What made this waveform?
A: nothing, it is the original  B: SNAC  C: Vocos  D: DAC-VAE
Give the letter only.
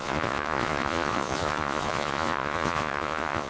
C